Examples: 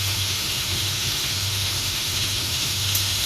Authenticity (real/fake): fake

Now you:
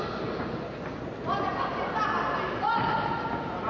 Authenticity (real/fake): real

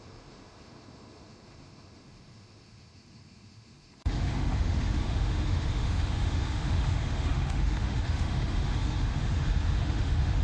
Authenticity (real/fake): fake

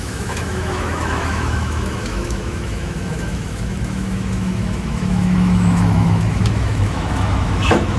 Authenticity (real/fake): fake